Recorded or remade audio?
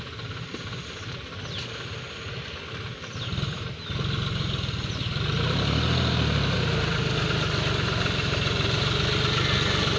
recorded